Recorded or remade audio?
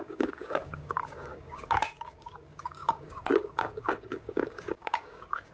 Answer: remade